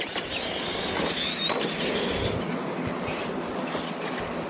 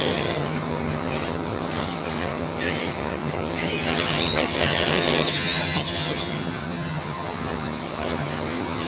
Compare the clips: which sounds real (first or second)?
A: first